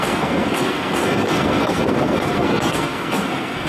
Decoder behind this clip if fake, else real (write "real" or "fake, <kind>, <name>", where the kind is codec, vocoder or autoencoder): fake, codec, SNAC